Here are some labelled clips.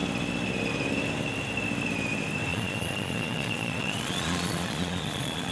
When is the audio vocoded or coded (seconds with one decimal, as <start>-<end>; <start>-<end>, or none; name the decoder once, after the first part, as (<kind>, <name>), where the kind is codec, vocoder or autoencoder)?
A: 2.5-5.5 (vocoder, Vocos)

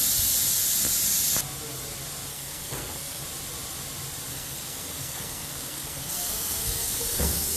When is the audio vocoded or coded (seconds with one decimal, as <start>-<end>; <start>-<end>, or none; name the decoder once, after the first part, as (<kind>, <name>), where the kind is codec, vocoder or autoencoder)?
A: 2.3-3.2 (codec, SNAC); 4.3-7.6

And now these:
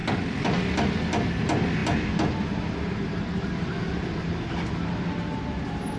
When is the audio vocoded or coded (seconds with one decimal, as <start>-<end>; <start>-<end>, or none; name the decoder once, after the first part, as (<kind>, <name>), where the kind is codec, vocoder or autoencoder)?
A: none

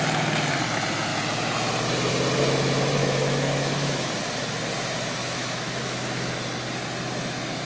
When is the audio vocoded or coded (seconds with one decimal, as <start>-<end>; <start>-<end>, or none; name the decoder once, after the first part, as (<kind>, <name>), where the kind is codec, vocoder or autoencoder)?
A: 3.0-4.1 (autoencoder, DAC-VAE); 5.2-6.3